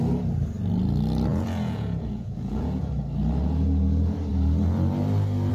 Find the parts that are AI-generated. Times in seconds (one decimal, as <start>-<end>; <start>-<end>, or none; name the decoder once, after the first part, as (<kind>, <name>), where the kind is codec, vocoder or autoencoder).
1.3-2.9 (vocoder, Vocos)